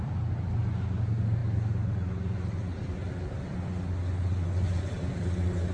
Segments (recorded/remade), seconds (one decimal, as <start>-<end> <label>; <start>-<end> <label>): 0.0-5.7 recorded